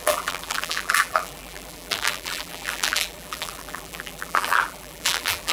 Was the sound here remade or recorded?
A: remade